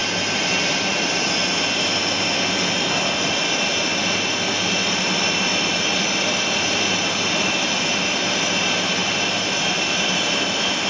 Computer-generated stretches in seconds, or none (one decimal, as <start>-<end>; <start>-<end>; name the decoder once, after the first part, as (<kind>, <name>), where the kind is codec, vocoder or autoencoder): none